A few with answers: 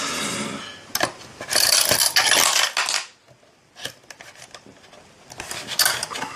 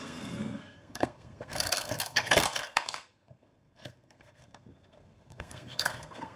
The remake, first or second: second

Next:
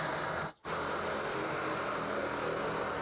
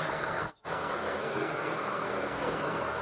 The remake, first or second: second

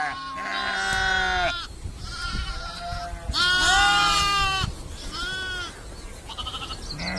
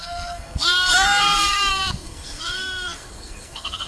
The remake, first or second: second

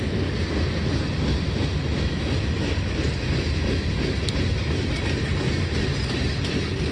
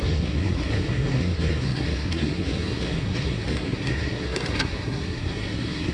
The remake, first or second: second